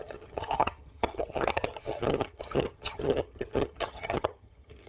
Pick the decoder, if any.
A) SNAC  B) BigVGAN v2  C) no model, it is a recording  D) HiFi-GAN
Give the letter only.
D